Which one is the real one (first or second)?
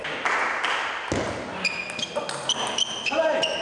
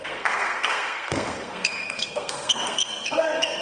first